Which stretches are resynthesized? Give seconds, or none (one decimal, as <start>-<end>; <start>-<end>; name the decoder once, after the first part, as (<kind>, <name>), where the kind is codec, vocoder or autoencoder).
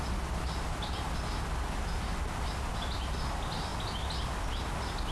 none